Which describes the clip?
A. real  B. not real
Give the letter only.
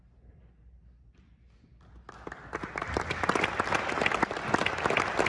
A